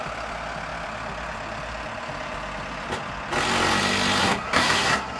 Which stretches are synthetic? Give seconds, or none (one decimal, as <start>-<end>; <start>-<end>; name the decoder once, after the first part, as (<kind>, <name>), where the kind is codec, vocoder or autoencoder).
4.2-5.2 (codec, SNAC)